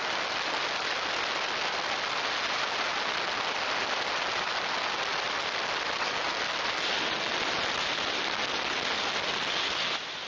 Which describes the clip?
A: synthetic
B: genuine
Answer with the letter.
B